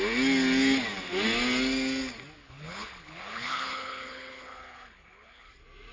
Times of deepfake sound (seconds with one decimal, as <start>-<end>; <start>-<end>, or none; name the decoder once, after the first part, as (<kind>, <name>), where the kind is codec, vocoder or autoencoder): 2.4-5.5 (codec, HILCodec)